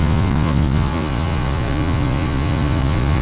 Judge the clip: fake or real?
fake